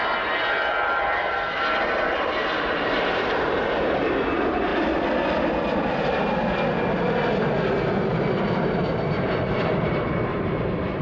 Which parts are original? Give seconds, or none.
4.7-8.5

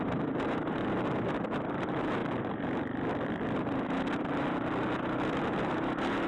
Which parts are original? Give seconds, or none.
0.8-1.8; 2.2-5.4

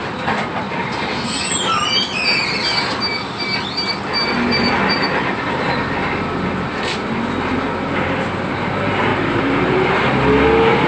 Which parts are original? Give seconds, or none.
0.0-9.1; 9.9-10.9

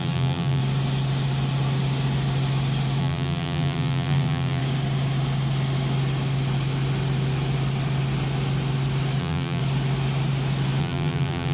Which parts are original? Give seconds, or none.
0.6-3.0; 4.6-9.2; 9.6-10.8

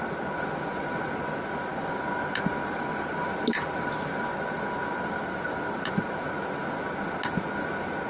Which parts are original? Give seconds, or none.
0.0-1.7; 3.4-4.3; 6.2-8.1

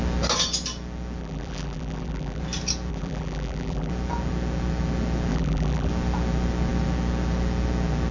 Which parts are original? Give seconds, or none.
0.0-1.2; 2.4-2.9; 3.9-5.3; 5.9-8.1

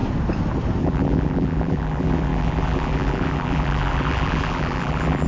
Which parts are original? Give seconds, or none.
0.0-0.8